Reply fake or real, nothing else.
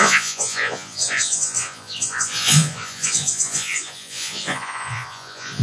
fake